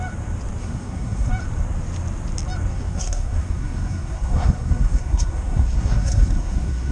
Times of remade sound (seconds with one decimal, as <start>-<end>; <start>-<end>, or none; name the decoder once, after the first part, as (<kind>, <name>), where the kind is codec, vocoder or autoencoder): 0.6-1.3 (codec, SNAC); 2.7-6.9